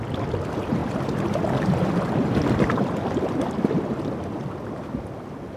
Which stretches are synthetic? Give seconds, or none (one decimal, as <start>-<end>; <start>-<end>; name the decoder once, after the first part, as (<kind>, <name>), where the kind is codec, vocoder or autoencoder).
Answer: 0.8-4.0 (vocoder, BigVGAN v2)